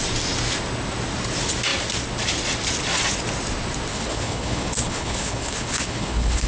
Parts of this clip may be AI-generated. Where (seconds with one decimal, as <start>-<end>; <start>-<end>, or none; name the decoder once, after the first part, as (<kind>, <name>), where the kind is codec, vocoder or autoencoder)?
3.9-6.5 (codec, HILCodec)